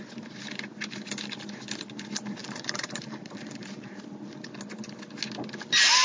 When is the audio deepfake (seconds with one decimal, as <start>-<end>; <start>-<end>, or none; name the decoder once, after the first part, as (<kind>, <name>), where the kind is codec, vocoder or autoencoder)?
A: 2.4-4.0 (vocoder, BigVGAN v2)